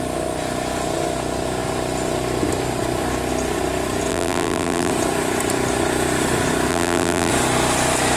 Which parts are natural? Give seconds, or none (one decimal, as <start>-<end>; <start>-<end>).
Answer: 0.0-4.1; 4.9-6.7; 7.3-8.2